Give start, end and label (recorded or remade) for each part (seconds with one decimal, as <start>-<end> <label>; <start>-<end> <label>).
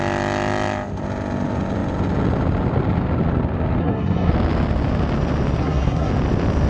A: 0.0-3.8 recorded; 3.8-4.3 remade; 4.3-5.6 recorded; 5.6-6.1 remade; 6.1-6.7 recorded